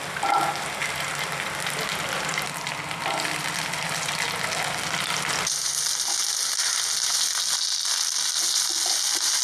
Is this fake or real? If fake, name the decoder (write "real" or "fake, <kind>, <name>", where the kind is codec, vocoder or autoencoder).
real